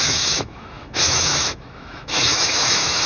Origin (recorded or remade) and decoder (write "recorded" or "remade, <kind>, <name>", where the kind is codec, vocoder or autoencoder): remade, autoencoder, DAC-VAE